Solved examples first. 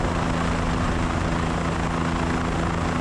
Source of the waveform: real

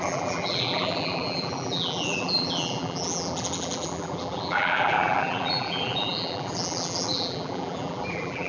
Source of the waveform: fake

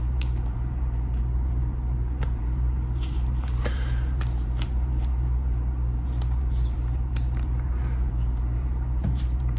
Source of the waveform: fake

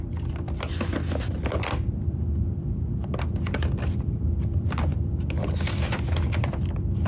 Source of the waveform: fake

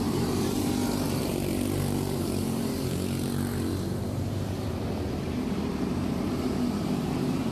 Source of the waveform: fake